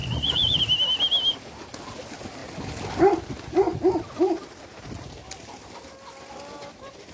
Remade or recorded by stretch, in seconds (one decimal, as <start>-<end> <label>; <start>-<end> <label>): 0.0-0.6 remade; 0.6-7.1 recorded